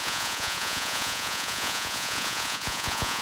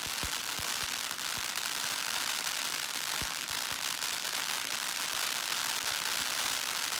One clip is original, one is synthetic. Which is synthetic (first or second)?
first